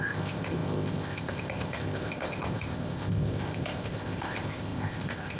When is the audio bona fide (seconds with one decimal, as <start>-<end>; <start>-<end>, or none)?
none